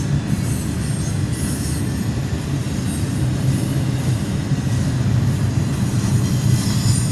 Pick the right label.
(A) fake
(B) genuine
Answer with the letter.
B